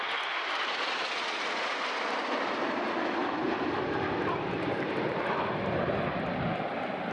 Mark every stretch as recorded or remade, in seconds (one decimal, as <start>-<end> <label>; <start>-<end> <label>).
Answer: 0.0-3.2 recorded; 3.2-5.2 remade; 5.2-6.1 recorded; 6.1-7.1 remade